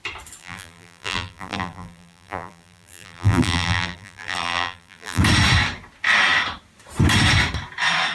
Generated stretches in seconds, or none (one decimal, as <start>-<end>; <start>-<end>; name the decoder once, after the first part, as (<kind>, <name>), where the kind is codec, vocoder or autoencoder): 0.4-5.2 (vocoder, BigVGAN v2)